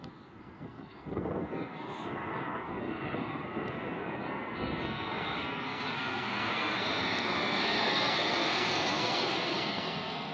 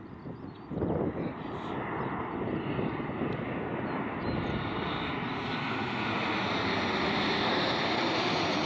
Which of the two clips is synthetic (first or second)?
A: first